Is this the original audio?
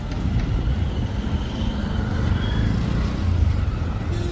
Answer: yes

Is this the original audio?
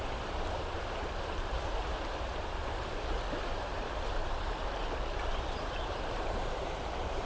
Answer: no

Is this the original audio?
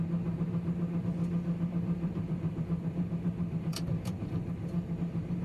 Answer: no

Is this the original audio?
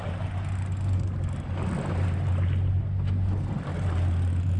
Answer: yes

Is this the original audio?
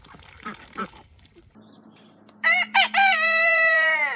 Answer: no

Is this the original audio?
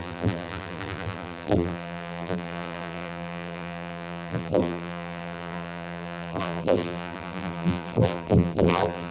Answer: no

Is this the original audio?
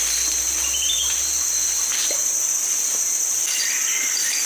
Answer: yes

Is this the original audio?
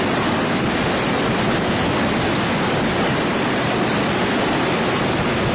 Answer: yes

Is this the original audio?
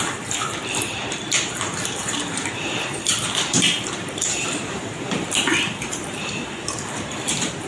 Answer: no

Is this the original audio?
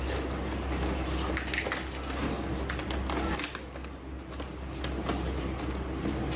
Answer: yes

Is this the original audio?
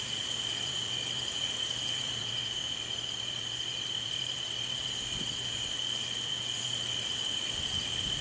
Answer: no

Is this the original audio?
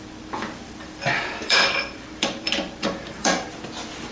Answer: no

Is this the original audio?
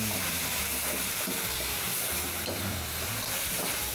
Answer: no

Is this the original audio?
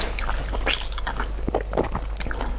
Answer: yes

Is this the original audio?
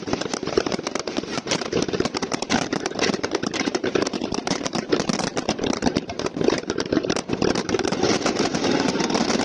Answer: no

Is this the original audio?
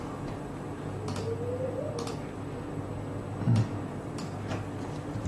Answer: yes